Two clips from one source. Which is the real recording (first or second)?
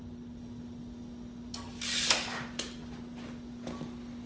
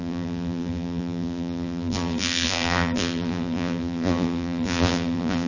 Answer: first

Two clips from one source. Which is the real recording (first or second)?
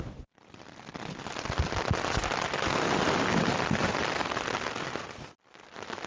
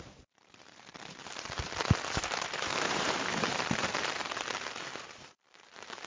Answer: first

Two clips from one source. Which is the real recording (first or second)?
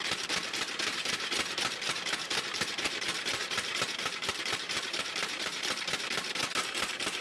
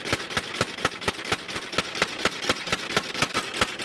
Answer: second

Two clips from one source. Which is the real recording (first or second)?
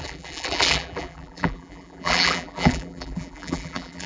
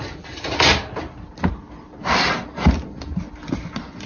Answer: second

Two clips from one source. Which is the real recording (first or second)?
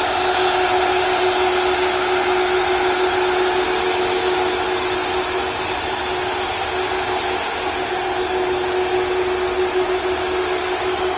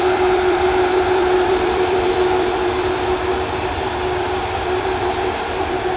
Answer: first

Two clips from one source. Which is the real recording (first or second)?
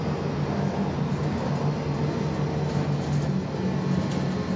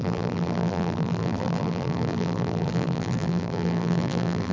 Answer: first